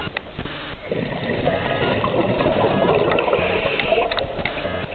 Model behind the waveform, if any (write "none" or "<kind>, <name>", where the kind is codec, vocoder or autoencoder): none